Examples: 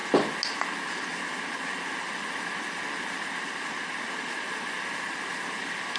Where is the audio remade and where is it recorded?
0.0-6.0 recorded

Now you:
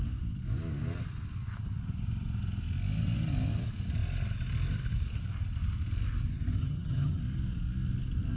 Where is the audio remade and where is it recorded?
0.0-6.6 recorded; 6.6-7.2 remade; 7.2-8.4 recorded

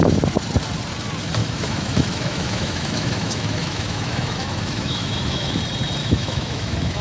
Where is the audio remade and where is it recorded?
0.0-1.4 recorded; 1.4-5.6 remade; 5.6-6.0 recorded; 6.0-7.0 remade

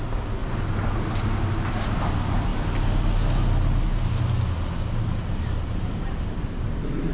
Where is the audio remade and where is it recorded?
0.0-7.1 recorded